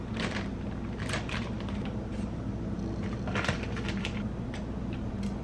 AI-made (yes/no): yes